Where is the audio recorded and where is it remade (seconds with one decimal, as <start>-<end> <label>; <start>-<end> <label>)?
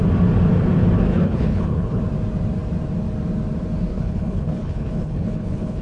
0.0-1.1 recorded; 1.1-2.0 remade; 2.0-3.9 recorded; 3.9-5.8 remade